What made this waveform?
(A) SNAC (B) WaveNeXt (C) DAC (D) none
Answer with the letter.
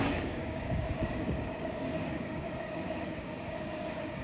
C